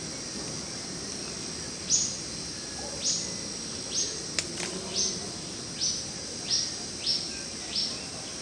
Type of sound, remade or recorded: recorded